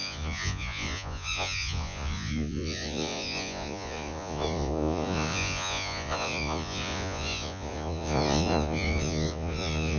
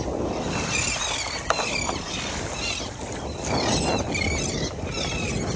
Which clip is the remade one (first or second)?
first